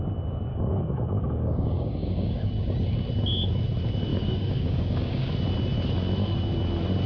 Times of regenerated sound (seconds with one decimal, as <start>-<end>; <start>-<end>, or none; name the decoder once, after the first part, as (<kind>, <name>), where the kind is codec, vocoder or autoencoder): 0.5-2.5 (codec, DAC); 4.1-5.3